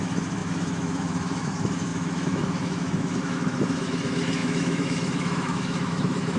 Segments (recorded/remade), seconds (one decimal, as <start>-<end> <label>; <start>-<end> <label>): 0.0-6.4 remade